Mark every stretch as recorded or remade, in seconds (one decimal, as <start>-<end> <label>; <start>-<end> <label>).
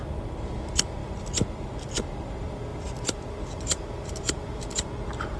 0.0-2.7 recorded; 2.7-4.6 remade; 4.6-5.4 recorded